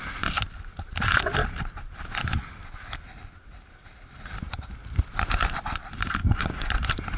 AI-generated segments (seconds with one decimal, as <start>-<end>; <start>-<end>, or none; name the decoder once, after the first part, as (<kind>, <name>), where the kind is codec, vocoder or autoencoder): 6.2-6.7 (codec, DAC)